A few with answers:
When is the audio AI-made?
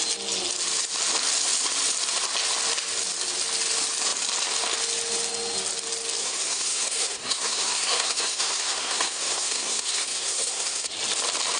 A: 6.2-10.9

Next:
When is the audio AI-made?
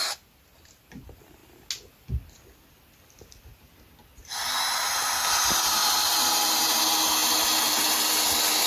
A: 5.8-6.8; 7.2-7.9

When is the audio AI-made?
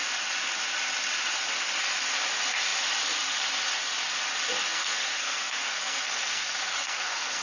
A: 4.7-7.4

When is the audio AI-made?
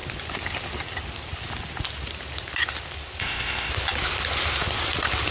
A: 3.2-3.7